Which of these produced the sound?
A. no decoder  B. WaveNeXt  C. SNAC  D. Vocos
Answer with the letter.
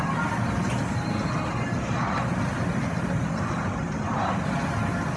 A